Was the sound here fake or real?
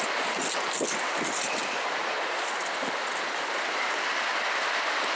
real